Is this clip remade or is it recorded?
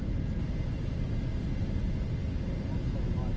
recorded